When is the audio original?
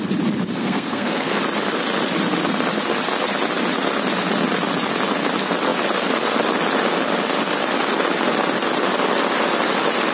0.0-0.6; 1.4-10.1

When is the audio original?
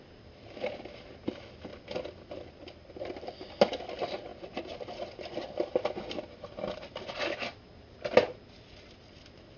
0.0-9.6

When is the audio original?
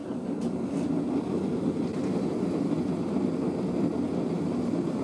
0.0-5.0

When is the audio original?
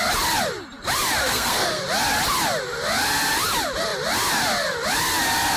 0.0-1.2; 1.8-5.6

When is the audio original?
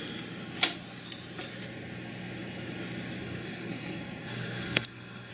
0.0-3.2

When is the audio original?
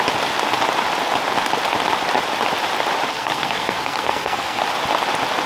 0.0-3.1; 4.6-5.5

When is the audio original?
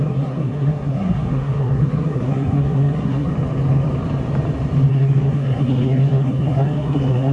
3.3-4.9